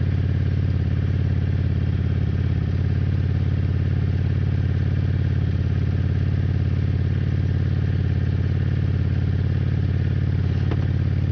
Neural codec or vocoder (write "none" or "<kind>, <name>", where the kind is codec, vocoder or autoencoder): none